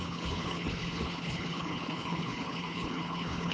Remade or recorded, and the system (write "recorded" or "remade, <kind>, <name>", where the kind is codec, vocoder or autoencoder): remade, codec, HILCodec